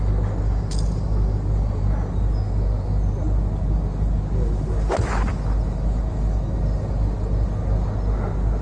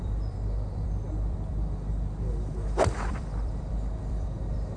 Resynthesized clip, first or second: second